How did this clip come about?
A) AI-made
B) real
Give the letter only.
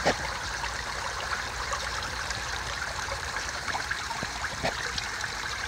A